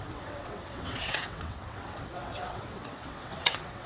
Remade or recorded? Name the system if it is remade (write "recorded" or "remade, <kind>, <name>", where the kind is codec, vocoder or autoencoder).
remade, vocoder, WaveNeXt